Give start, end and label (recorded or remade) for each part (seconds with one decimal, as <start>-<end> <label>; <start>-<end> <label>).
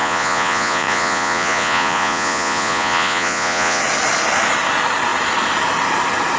0.0-3.8 remade; 3.8-6.4 recorded